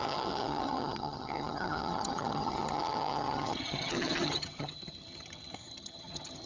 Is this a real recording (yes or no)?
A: no